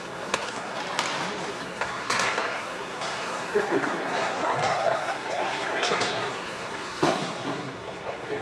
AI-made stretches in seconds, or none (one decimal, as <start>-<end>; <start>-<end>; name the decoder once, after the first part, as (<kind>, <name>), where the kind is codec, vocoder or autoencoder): 0.0-0.8 (codec, SNAC); 1.5-8.4